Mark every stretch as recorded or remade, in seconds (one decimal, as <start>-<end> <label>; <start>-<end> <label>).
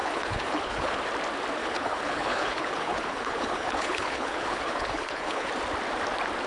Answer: 0.0-1.0 remade; 1.0-1.6 recorded; 1.6-5.5 remade; 5.5-6.5 recorded